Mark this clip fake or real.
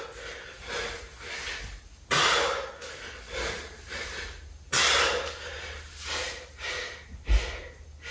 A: real